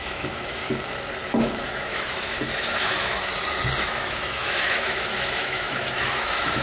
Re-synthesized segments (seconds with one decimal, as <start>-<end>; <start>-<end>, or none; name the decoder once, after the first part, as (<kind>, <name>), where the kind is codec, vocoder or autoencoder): 0.0-0.6 (autoencoder, DAC-VAE); 1.3-3.3; 3.8-6.6